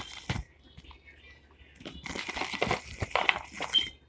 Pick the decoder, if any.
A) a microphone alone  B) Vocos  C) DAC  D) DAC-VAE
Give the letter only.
A